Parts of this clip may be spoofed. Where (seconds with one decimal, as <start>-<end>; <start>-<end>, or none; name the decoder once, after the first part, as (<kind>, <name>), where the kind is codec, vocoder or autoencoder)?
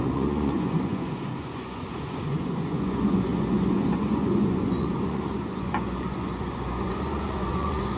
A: 0.0-8.0 (vocoder, Vocos)